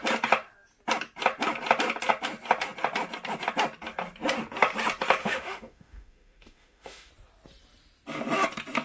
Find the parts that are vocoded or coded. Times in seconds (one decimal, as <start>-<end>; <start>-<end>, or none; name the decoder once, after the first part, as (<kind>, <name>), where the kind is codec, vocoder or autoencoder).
5.2-7.1 (autoencoder, DAC-VAE)